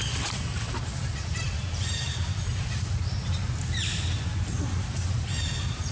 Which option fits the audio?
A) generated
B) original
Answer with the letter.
B